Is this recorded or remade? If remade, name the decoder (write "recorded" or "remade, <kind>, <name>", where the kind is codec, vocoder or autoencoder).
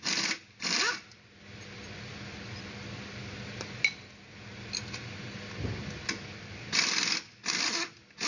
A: recorded